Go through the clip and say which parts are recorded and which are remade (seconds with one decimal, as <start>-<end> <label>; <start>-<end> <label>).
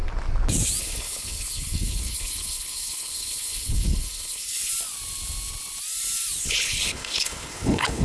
0.0-0.8 recorded; 0.8-4.7 remade; 4.7-6.4 recorded; 6.4-8.0 remade